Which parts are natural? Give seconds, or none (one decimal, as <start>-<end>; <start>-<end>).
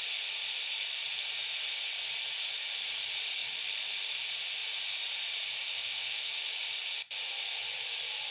0.0-5.7; 6.3-8.3